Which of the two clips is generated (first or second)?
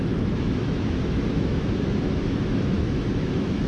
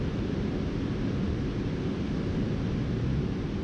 first